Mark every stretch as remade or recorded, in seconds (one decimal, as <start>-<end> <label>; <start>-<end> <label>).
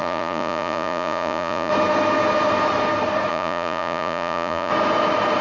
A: 0.0-1.7 remade; 1.7-3.3 recorded; 3.3-4.7 remade; 4.7-5.4 recorded